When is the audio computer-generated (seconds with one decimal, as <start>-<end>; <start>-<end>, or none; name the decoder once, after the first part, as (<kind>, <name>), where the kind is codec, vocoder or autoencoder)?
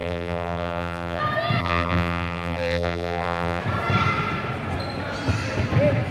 0.0-1.2 (vocoder, BigVGAN v2); 1.6-3.6